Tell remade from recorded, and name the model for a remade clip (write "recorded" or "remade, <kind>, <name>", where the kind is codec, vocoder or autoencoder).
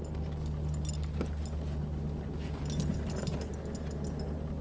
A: recorded